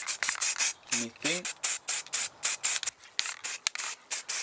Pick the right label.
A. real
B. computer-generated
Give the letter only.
A